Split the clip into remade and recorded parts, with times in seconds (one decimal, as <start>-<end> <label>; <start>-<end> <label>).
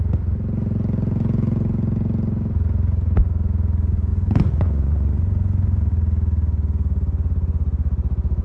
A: 0.0-4.1 recorded; 4.1-5.9 remade; 5.9-8.4 recorded